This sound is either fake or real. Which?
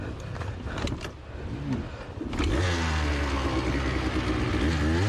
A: real